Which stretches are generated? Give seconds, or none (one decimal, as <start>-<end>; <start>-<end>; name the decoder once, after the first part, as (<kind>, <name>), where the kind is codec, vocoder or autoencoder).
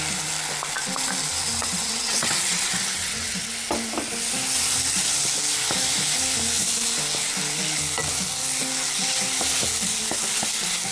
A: 1.6-3.5 (vocoder, WaveNeXt)